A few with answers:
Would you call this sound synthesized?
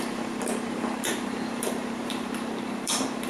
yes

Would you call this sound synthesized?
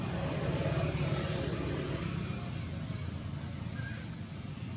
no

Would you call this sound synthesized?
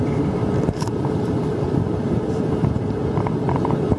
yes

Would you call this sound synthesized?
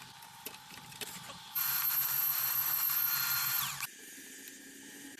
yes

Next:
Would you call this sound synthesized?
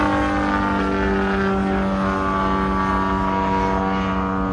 no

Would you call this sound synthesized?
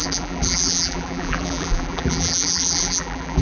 yes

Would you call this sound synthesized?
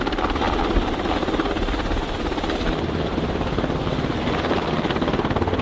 no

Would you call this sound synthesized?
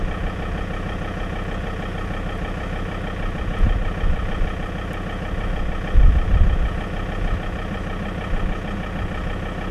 no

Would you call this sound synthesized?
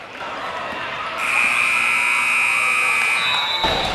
no